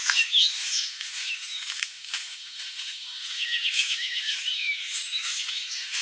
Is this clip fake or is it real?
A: fake